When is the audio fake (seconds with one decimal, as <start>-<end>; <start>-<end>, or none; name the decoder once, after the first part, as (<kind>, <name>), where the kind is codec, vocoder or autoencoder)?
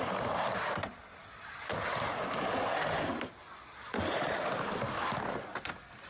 none